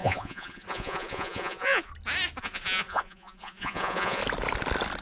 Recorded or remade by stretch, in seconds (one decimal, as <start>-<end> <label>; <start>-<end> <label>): 0.0-1.9 remade; 1.9-2.4 recorded; 2.4-4.2 remade; 4.2-5.0 recorded